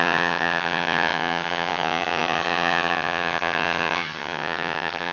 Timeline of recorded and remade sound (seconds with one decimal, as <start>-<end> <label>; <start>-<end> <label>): 0.0-5.1 remade